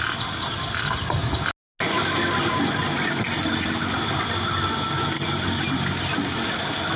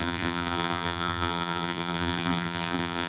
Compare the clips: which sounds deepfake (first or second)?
second